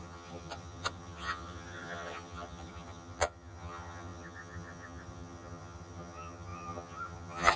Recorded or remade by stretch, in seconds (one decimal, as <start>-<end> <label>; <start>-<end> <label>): 0.0-7.6 remade